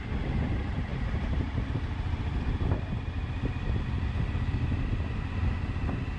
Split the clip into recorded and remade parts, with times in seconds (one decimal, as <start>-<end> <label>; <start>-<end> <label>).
0.0-0.9 recorded; 0.9-3.4 remade; 3.4-6.2 recorded

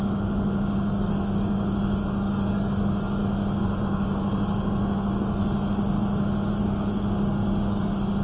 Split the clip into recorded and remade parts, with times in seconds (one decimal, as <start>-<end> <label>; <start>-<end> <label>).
0.0-3.2 remade; 3.2-3.8 recorded; 3.8-5.4 remade; 5.4-6.6 recorded; 6.6-8.2 remade

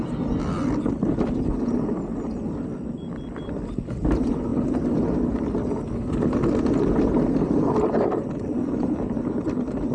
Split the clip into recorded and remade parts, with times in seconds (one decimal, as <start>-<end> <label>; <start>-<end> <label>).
0.0-9.9 recorded

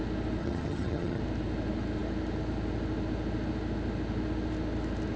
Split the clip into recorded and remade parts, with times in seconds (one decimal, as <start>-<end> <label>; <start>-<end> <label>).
0.0-0.4 recorded; 0.4-1.2 remade; 1.2-5.2 recorded

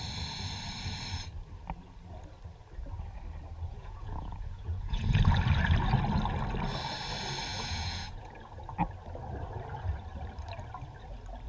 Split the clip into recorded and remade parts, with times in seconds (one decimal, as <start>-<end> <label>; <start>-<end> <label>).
0.0-3.7 recorded; 3.7-5.2 remade; 5.2-7.5 recorded; 7.5-8.5 remade; 8.5-11.5 recorded